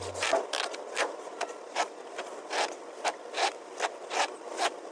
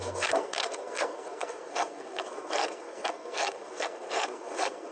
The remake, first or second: second